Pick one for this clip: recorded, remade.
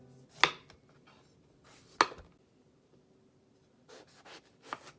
recorded